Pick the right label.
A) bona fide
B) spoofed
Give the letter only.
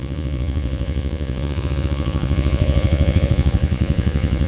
B